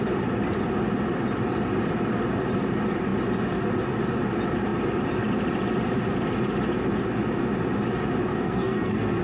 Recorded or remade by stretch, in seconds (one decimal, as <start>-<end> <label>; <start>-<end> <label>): 0.0-8.3 recorded; 8.3-9.2 remade